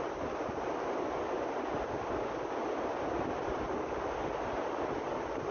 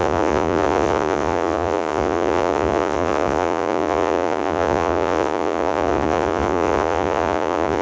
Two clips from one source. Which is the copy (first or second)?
second